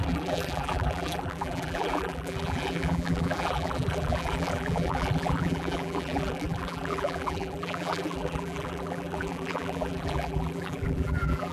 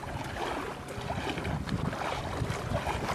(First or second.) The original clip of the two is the second